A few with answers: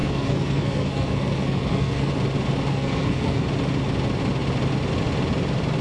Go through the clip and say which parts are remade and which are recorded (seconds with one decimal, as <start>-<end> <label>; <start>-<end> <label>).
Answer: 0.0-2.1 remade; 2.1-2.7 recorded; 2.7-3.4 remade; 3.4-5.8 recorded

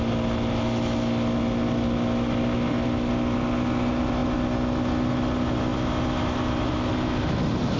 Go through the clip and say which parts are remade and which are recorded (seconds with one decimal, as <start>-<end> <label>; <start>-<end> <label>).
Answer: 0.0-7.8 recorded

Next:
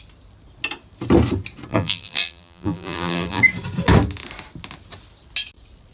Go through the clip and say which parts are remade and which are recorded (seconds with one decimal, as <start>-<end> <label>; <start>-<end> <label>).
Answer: 0.0-1.7 recorded; 1.7-3.4 remade; 3.4-5.9 recorded

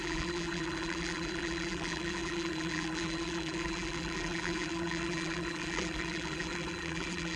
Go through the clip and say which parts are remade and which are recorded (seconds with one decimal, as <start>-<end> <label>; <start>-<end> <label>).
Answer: 0.0-7.4 remade

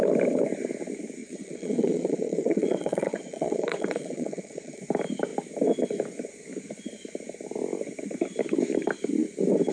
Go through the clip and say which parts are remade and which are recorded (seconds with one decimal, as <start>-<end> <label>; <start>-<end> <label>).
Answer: 0.0-1.2 recorded; 1.2-4.8 remade; 4.8-9.7 recorded

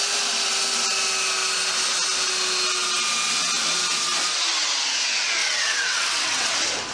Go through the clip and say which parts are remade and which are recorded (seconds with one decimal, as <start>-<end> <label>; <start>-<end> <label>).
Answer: 0.0-5.4 recorded; 5.4-6.5 remade; 6.5-6.9 recorded